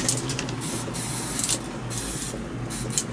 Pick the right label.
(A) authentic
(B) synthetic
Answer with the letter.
A